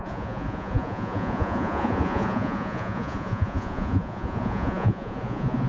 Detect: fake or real fake